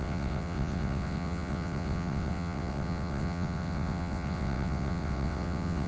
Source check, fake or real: fake